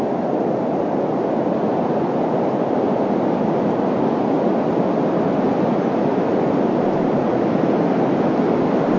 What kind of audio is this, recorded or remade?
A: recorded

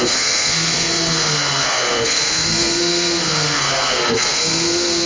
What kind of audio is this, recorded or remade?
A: remade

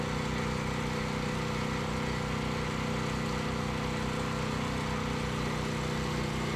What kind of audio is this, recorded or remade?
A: recorded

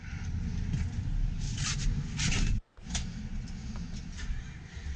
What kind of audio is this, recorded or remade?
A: recorded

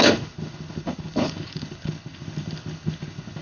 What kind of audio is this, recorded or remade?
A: remade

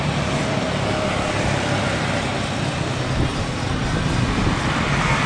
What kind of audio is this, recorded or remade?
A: recorded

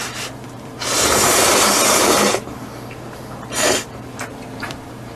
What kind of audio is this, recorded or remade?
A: remade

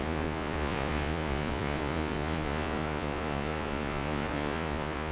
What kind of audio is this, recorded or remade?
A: remade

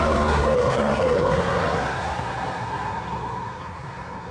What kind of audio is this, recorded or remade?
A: remade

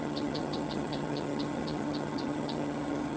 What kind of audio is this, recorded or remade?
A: remade